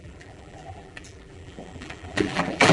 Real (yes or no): no